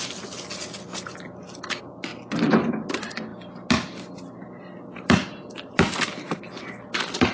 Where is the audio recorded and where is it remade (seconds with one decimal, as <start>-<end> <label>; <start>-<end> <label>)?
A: 0.0-7.3 recorded